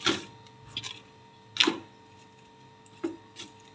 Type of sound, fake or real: real